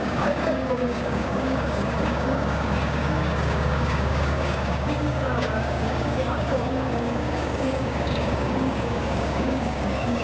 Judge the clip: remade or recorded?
remade